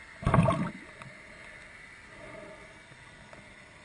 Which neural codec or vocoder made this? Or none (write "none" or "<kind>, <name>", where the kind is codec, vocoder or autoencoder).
none